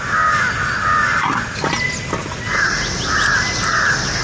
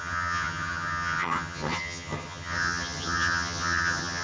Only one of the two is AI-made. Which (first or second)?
second